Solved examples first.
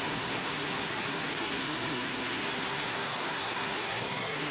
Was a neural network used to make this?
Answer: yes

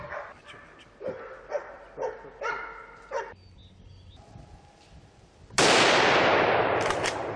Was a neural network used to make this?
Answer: no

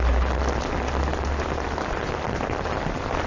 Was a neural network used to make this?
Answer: no